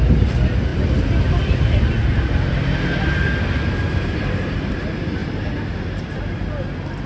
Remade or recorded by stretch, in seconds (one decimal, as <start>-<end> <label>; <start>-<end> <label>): 0.0-7.1 recorded